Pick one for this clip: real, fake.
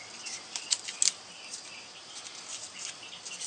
real